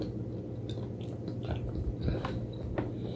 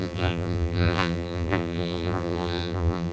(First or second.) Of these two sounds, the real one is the first